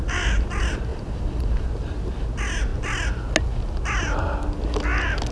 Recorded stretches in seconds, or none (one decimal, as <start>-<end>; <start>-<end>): 0.0-0.9; 1.7-5.3